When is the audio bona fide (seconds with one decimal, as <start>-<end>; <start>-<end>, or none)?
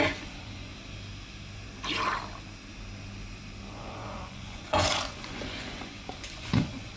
0.7-3.7